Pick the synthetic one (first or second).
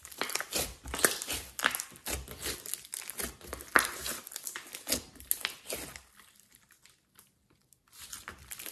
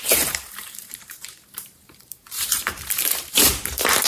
second